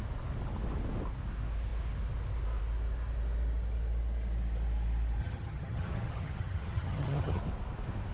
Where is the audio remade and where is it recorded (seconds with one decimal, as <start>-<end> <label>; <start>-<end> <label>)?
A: 0.0-5.2 recorded; 5.2-7.4 remade; 7.4-8.1 recorded